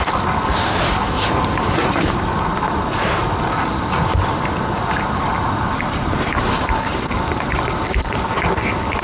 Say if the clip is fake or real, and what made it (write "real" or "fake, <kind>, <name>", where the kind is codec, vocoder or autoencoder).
real